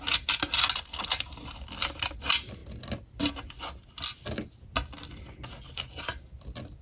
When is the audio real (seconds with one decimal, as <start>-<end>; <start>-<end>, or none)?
0.0-6.8